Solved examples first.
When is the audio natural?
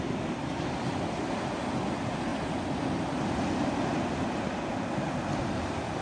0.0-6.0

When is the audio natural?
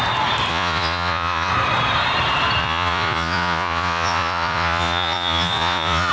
0.0-0.5; 1.5-2.6